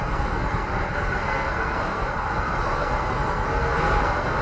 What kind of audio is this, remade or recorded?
remade